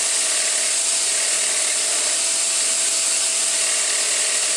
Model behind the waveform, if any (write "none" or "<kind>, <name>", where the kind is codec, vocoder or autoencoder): none